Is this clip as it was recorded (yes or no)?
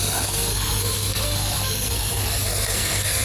no